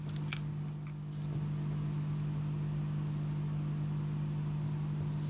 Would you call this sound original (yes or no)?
yes